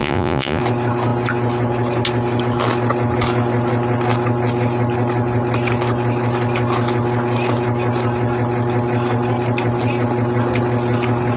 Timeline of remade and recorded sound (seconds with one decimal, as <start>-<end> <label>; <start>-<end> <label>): 0.0-0.6 remade; 0.6-11.4 recorded